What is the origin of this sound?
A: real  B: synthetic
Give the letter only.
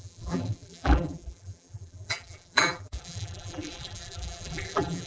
B